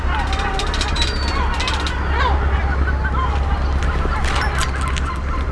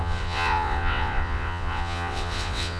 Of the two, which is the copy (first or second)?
second